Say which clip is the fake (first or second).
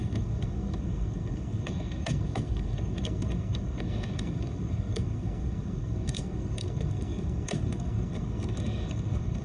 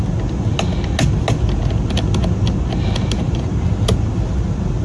first